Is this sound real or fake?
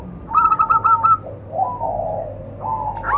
real